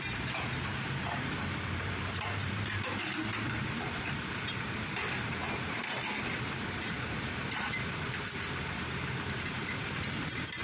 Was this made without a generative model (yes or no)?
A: no